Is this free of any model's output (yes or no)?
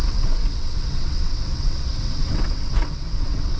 no